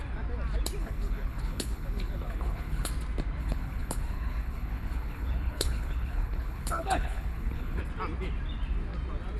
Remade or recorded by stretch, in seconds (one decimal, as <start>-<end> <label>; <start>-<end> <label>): 0.0-0.8 recorded; 0.8-2.9 remade; 2.9-3.4 recorded; 3.4-7.8 remade; 7.8-9.4 recorded